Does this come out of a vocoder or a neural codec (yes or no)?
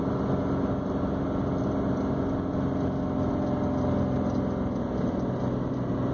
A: no